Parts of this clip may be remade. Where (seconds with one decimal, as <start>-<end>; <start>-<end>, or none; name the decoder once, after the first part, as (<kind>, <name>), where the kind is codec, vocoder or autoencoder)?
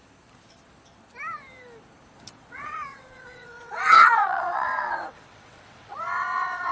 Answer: 2.4-6.7 (vocoder, WaveNeXt)